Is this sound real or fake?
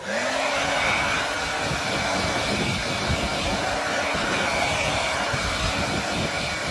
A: real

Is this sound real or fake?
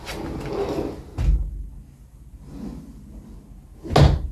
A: real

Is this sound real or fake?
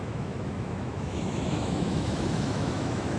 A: fake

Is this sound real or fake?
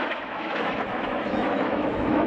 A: fake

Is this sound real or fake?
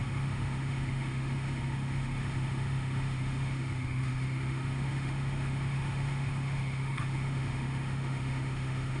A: fake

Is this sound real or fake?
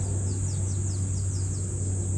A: real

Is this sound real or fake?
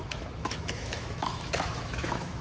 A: fake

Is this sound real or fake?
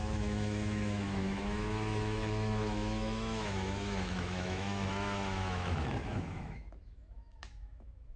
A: fake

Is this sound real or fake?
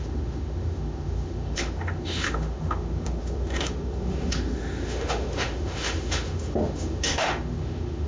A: fake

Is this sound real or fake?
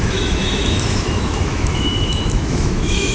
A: fake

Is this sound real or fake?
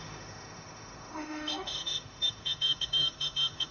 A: fake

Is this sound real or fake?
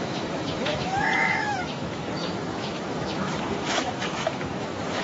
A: fake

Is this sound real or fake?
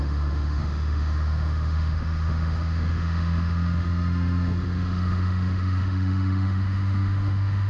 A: fake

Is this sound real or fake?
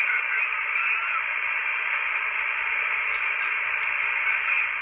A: real